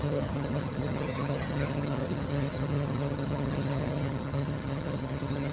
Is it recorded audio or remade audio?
remade